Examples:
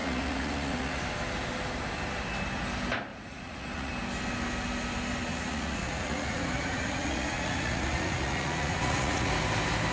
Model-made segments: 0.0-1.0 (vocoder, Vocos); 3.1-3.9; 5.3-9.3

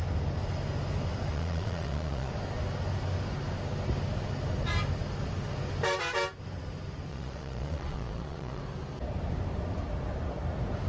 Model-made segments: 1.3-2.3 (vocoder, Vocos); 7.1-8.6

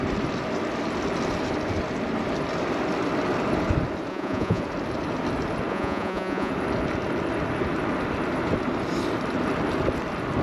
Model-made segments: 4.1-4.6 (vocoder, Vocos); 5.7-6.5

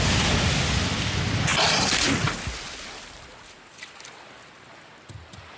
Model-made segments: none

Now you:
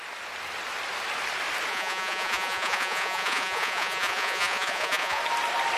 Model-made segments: 1.7-5.2 (vocoder, Vocos)

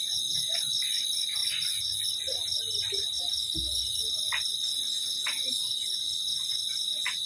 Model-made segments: 0.0-0.8 (vocoder, Vocos)